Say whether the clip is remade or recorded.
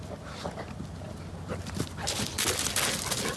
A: recorded